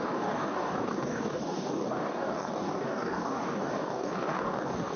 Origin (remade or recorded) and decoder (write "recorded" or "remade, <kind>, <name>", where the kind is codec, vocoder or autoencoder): remade, codec, DAC